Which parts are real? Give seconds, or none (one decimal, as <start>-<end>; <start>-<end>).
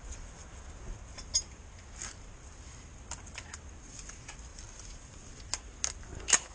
0.0-6.5